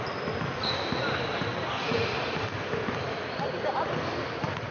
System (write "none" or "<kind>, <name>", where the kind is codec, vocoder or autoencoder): vocoder, BigVGAN v2